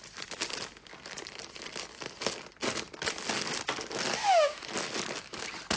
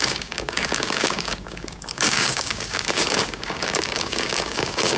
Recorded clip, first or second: first